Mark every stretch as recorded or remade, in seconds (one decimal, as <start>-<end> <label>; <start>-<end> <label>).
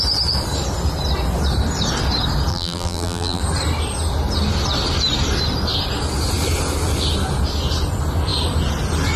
0.0-2.5 recorded; 2.5-3.4 remade; 3.4-9.2 recorded